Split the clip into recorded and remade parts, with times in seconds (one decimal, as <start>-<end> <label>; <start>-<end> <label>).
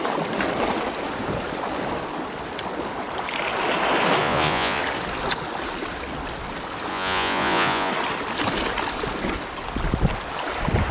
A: 0.0-4.2 recorded; 4.2-4.8 remade; 4.8-6.9 recorded; 6.9-7.9 remade; 7.9-10.9 recorded